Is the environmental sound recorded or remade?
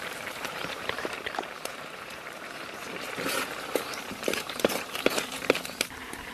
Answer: remade